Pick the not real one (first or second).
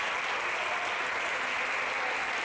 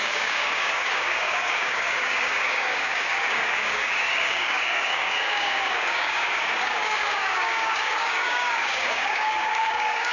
second